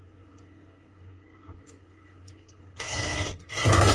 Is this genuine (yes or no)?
no